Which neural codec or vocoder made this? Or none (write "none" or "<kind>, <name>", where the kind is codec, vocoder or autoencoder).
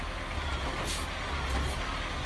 none